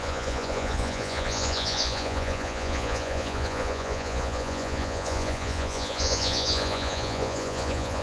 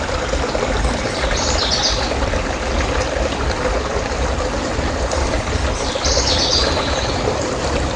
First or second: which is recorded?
second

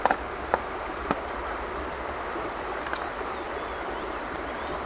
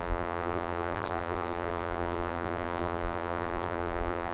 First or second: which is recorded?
first